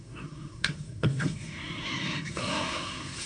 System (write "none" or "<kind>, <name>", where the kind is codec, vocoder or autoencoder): codec, SNAC